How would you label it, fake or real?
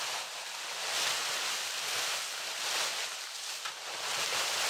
real